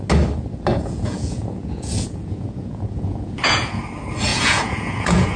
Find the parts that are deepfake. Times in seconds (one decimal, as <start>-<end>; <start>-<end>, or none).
0.7-3.8; 4.3-5.4